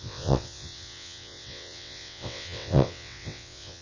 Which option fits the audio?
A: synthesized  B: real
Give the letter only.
A